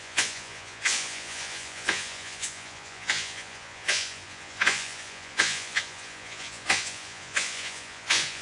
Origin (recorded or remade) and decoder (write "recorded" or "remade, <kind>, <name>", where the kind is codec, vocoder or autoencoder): remade, vocoder, Vocos